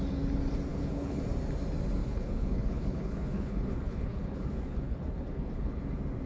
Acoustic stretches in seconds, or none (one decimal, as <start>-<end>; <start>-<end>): 0.0-0.7; 1.2-2.0; 5.8-6.3